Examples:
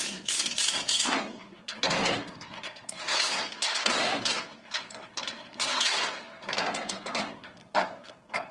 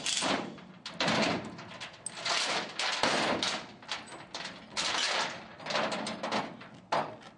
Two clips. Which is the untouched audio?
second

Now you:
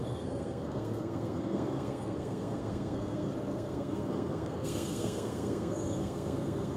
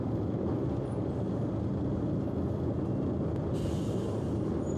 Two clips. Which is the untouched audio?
second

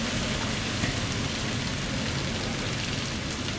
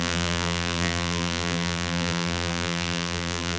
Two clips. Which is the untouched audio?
first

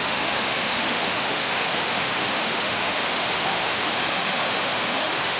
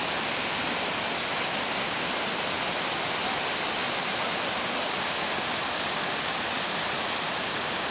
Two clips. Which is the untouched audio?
second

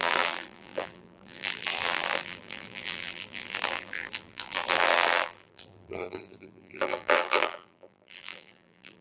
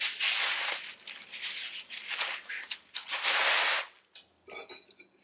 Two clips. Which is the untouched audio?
second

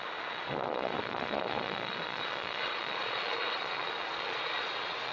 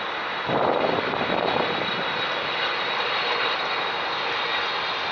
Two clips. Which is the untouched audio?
second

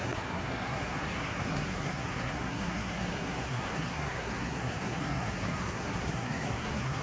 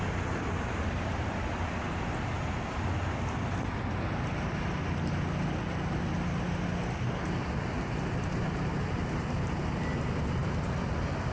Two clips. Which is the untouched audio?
second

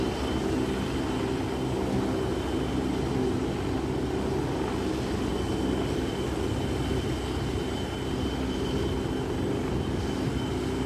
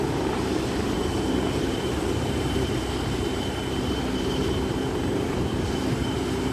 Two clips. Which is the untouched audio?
first